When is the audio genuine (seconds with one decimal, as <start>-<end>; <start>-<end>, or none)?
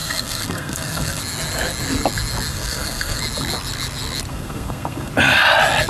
1.2-2.5; 3.2-4.3; 5.1-5.9